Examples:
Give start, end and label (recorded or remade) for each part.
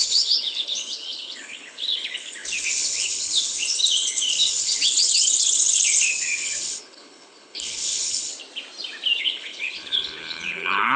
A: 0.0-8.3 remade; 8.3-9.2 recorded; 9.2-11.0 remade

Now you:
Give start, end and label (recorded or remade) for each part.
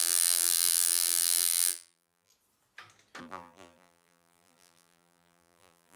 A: 0.0-2.3 remade; 2.3-3.2 recorded; 3.2-6.0 remade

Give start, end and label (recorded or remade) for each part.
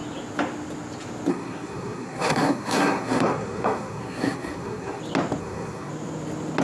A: 0.0-1.3 recorded; 1.3-5.0 remade; 5.0-5.4 recorded; 5.4-5.9 remade; 5.9-6.6 recorded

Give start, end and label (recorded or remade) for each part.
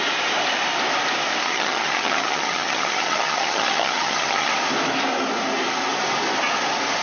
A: 0.0-1.4 recorded; 1.4-4.5 remade; 4.5-7.0 recorded